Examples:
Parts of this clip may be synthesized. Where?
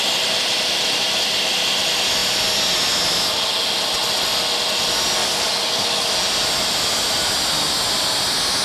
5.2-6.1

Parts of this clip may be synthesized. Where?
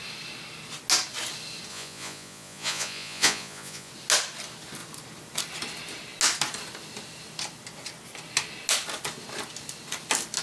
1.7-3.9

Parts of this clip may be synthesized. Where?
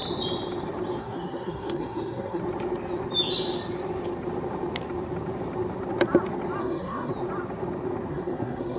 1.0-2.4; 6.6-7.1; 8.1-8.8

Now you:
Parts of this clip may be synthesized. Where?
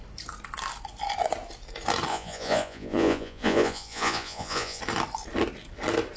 2.1-4.8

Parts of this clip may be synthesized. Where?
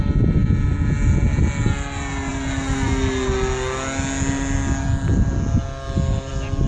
none